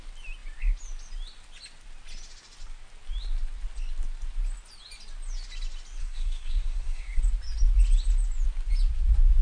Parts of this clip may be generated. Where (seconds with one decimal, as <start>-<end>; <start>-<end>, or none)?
6.0-7.2